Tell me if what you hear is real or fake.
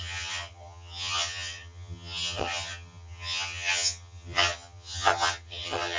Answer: fake